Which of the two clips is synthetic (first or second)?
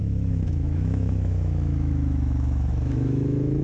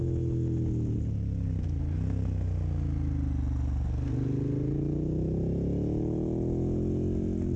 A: first